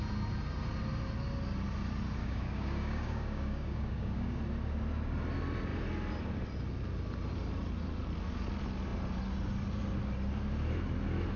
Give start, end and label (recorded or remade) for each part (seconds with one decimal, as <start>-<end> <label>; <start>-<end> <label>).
0.0-2.2 recorded; 2.2-4.4 remade; 4.4-11.4 recorded